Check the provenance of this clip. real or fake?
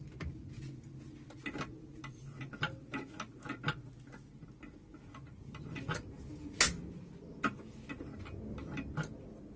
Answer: real